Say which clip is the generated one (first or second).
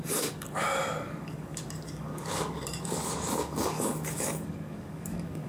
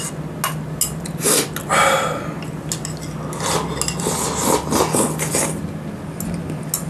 first